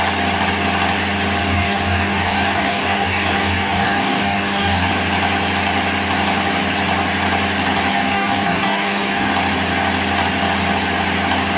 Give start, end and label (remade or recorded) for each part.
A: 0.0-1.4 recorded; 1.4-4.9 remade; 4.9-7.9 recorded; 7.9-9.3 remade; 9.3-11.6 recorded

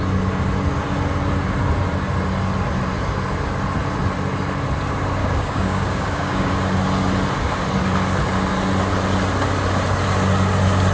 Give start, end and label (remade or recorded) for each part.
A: 0.0-5.2 recorded; 5.2-6.5 remade; 6.5-10.9 recorded

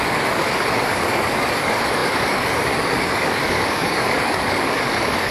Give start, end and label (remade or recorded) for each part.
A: 0.0-5.3 remade

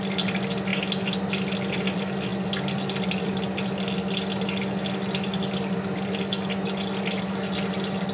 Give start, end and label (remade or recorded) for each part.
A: 0.0-8.1 recorded